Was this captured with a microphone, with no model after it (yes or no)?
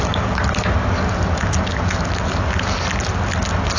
yes